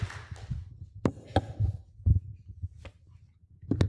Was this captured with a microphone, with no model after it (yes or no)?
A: yes